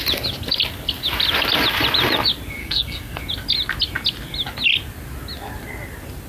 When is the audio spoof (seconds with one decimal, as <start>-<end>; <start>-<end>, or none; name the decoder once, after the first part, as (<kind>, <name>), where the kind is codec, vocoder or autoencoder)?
2.6-3.2 (codec, SNAC)